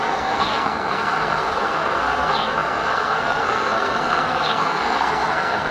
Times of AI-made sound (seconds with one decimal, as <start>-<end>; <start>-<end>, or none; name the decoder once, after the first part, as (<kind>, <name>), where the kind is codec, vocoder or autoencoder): 0.0-5.7 (codec, SNAC)